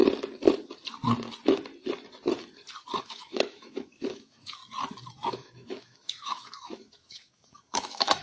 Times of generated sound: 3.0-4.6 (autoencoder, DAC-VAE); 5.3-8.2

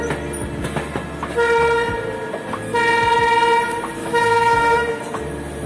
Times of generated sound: 4.0-5.0 (autoencoder, DAC-VAE)